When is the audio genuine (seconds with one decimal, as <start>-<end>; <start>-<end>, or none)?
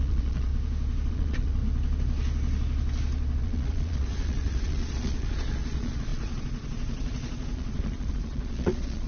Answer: 0.5-1.1; 1.6-3.4